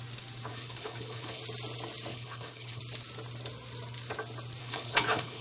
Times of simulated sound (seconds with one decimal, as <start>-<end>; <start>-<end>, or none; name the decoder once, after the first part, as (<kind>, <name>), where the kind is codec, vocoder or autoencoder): 0.5-1.4 (codec, HILCodec); 2.1-2.8; 4.6-5.4